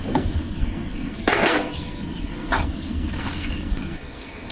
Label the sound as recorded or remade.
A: remade